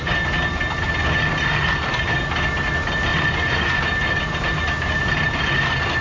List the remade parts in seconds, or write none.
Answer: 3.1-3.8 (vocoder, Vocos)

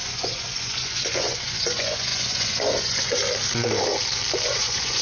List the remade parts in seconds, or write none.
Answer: 0.0-3.2 (vocoder, Vocos); 4.5-5.0

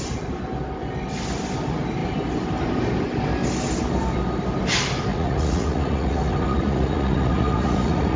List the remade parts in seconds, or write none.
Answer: 5.1-8.2 (vocoder, Vocos)

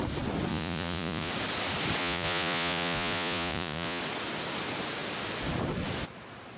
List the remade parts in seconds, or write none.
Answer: 0.5-1.3 (vocoder, Vocos); 2.0-4.0

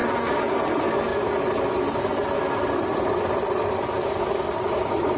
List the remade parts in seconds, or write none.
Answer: none

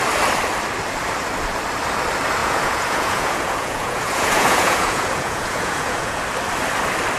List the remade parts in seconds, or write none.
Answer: 2.4-6.2 (vocoder, Vocos)

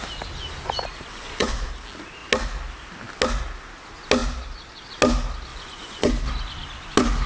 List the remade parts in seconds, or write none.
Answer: 1.1-1.7 (vocoder, Vocos); 5.5-6.1